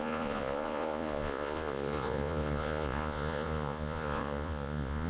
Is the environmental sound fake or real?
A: fake